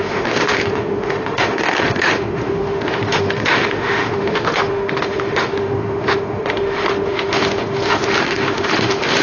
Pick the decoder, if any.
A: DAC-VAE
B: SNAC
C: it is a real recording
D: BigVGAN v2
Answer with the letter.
A